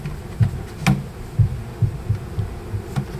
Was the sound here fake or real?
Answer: real